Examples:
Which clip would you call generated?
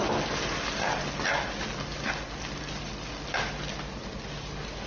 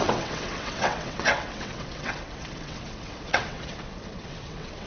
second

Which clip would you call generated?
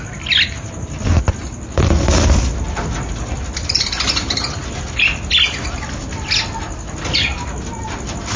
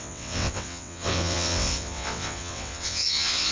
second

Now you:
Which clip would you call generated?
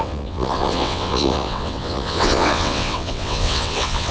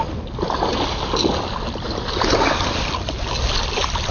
first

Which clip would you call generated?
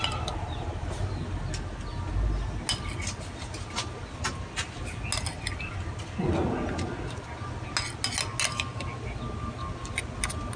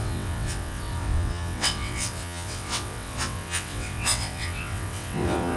second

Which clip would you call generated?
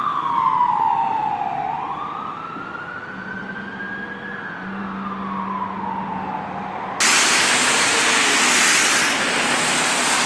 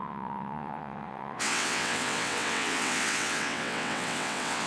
second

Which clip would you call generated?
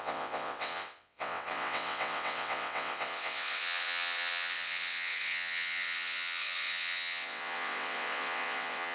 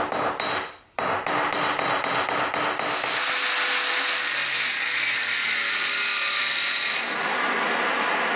first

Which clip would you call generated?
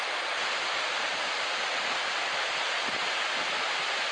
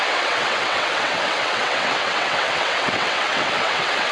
second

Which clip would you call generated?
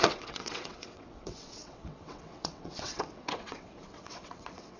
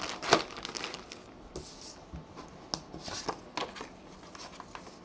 first